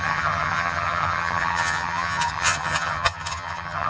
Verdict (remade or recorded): remade